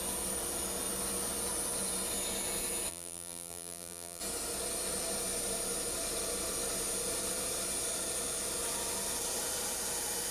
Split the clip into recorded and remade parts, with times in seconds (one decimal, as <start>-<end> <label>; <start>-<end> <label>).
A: 0.0-2.9 recorded; 2.9-4.2 remade; 4.2-10.3 recorded